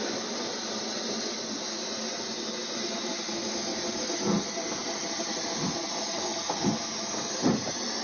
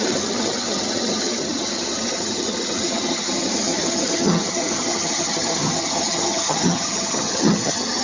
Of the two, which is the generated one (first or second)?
second